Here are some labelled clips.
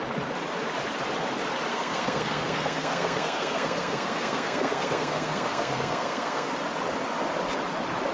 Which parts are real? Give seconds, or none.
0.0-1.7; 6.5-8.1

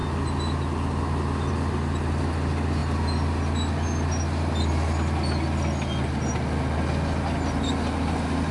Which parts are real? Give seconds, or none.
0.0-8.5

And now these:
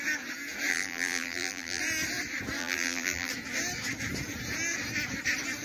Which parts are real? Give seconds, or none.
0.0-0.7; 1.8-2.6; 3.3-5.6

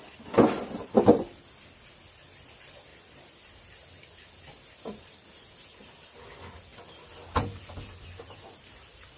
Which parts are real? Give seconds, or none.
0.0-2.9; 3.9-9.2